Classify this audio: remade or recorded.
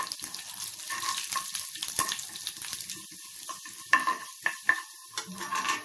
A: recorded